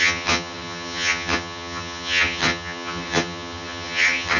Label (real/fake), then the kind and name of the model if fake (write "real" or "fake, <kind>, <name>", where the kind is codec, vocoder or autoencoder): fake, vocoder, HiFi-GAN